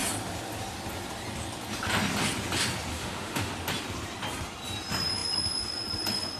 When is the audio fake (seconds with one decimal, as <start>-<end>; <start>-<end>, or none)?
2.9-3.5